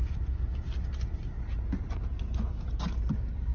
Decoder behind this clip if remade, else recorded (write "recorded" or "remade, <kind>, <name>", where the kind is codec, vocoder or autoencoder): recorded